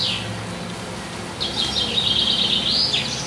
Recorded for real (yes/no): yes